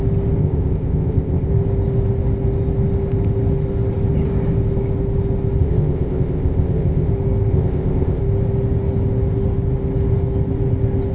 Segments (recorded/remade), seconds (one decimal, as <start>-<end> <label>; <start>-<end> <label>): 0.0-0.4 recorded; 0.4-1.5 remade; 1.5-5.6 recorded; 5.6-7.1 remade; 7.1-7.5 recorded; 7.5-8.2 remade; 8.2-11.1 recorded